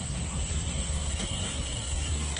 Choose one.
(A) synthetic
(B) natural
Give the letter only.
A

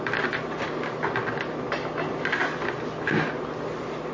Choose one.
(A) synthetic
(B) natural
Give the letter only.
B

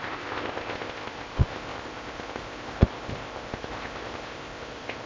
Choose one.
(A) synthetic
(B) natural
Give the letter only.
A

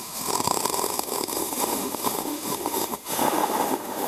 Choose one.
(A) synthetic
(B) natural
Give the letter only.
A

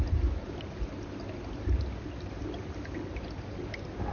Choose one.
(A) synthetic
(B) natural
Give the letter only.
B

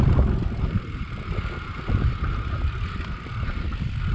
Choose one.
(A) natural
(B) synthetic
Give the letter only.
A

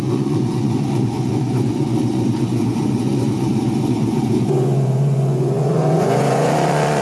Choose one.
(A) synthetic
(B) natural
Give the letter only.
A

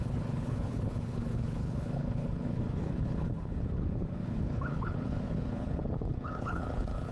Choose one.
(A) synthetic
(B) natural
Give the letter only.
A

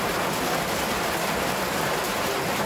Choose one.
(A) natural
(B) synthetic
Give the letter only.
A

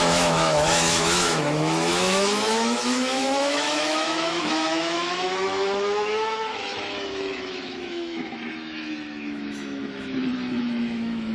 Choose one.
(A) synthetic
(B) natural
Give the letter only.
A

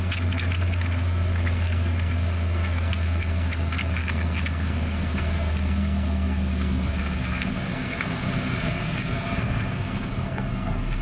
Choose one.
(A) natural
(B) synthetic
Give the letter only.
B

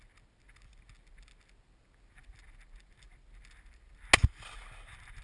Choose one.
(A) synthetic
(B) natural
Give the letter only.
B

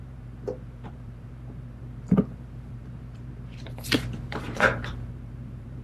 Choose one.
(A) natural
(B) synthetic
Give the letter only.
B